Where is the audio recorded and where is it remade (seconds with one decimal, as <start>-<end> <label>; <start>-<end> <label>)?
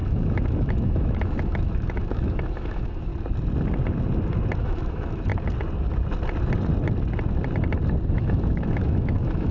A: 0.0-3.1 remade; 3.1-4.6 recorded; 4.6-5.3 remade; 5.3-8.1 recorded; 8.1-9.5 remade